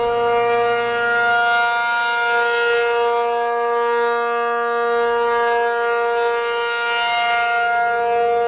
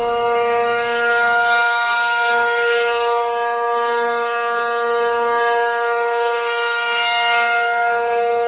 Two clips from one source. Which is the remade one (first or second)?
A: second